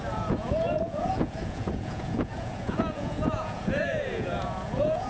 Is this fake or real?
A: fake